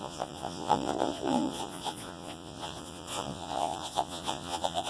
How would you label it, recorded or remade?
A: remade